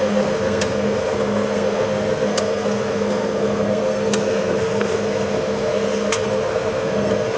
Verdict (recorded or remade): remade